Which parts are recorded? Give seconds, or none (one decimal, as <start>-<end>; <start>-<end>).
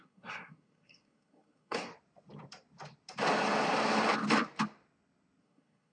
1.9-5.4